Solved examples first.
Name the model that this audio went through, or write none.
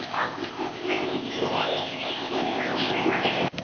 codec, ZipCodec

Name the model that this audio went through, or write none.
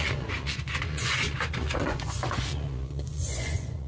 vocoder, Vocos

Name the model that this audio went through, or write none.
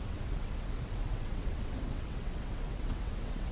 vocoder, WaveNeXt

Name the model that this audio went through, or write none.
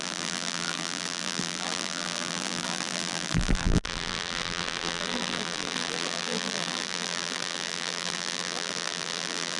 vocoder, BigVGAN v2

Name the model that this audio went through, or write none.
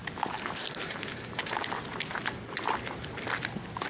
none